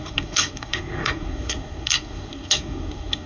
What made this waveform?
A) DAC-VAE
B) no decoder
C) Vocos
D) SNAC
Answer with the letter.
D